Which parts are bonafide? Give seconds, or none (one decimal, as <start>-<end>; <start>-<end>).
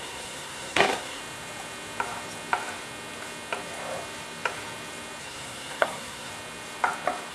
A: 1.2-5.2; 6.3-7.3